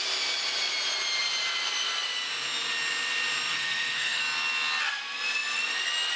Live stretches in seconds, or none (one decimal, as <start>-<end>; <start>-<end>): 0.0-3.5; 4.2-6.2